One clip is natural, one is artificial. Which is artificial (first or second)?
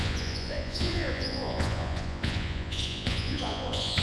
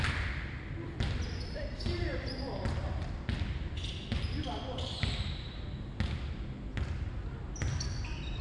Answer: first